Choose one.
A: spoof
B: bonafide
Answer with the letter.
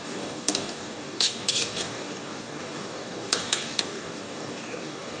A